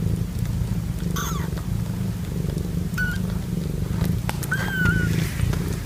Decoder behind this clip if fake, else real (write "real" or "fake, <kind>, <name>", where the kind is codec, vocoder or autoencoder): real